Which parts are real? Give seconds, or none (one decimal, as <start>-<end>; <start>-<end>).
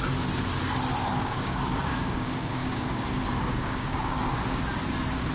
0.0-1.0; 4.2-5.3